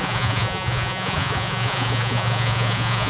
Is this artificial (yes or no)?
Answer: yes